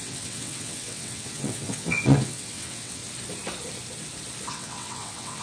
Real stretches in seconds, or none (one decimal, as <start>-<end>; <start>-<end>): 3.0-4.5